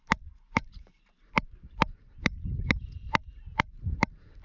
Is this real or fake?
fake